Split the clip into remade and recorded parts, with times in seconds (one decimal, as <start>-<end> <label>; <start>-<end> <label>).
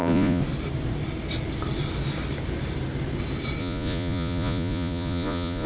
0.0-0.4 remade; 0.4-3.6 recorded; 3.6-5.7 remade